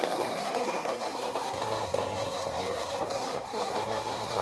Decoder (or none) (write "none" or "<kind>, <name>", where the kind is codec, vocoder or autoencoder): codec, SNAC